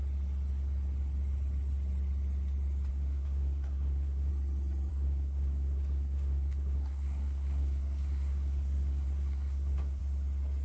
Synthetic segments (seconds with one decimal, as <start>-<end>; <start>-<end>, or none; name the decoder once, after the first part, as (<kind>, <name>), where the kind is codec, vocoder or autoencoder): 2.9-4.3 (codec, SNAC); 4.9-10.0